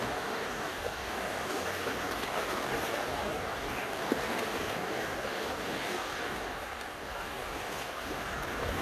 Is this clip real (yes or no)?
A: no